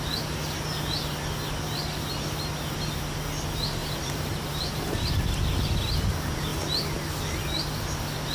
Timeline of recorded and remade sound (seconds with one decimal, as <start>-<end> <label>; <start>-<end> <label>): 0.0-3.8 recorded; 3.8-5.1 remade; 5.1-8.3 recorded